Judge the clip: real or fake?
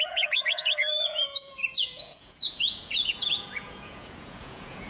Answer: fake